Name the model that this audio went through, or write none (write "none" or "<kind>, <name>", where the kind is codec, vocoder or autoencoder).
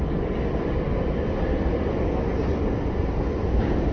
none